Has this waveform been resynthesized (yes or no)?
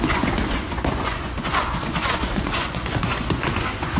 yes